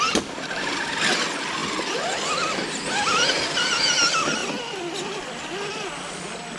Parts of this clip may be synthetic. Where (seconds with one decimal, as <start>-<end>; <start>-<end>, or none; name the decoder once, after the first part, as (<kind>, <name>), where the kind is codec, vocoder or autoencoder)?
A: none